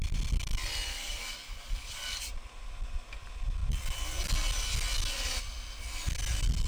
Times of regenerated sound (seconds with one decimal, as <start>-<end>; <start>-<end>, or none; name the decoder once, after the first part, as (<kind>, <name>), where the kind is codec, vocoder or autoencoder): 0.9-2.2 (codec, DAC)